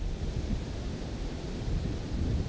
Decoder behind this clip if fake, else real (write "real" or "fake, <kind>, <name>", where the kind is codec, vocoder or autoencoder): real